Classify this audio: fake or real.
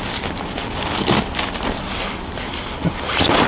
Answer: real